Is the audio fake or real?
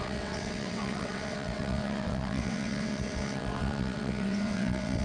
fake